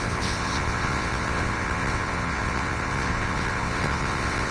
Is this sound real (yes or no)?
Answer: no